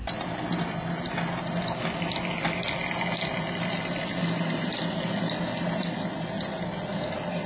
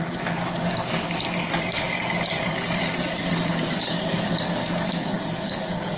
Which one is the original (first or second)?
first